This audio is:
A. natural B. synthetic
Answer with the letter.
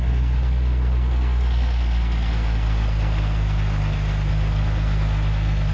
B